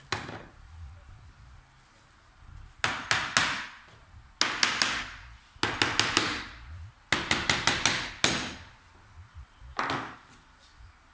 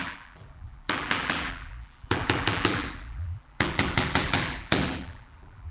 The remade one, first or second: second